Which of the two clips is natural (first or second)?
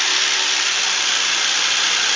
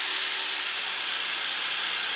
second